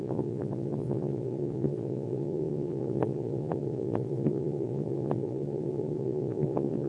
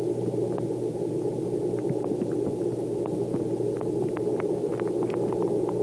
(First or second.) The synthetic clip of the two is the first